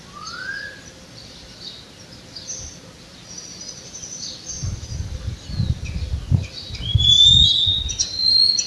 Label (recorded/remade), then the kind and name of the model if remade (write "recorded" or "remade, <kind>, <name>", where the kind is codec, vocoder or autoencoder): recorded